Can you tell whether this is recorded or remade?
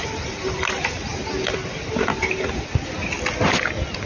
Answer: recorded